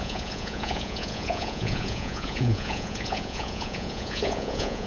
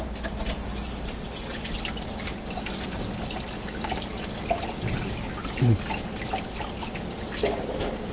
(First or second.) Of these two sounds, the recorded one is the second